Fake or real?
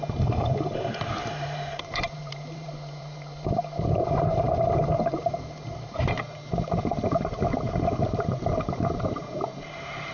fake